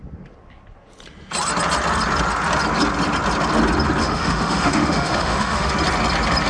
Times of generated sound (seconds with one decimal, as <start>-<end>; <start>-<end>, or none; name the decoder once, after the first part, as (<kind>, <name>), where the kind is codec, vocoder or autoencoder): 4.0-5.7 (autoencoder, DAC-VAE)